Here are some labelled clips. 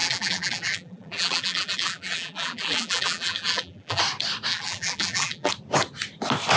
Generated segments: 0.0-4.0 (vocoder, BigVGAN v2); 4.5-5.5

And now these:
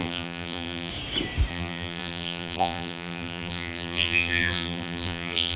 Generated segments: 0.0-0.9 (vocoder, BigVGAN v2); 1.5-5.6

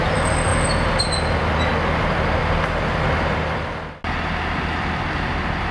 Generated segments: none

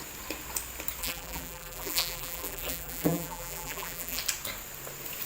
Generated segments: 1.0-4.2 (vocoder, BigVGAN v2)

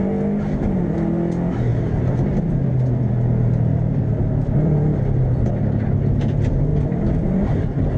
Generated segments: 1.7-5.5 (vocoder, BigVGAN v2); 6.7-8.0

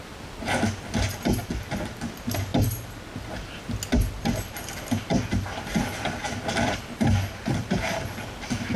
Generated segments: none

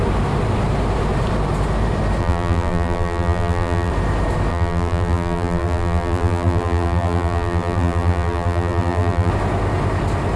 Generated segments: 2.2-3.9 (vocoder, BigVGAN v2); 4.5-9.3

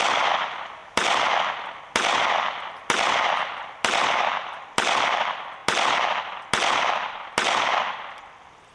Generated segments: none